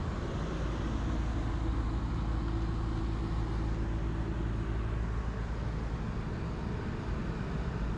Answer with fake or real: real